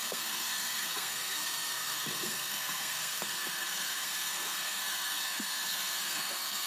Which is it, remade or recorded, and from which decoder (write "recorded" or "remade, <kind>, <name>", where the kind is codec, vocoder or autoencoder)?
remade, codec, SNAC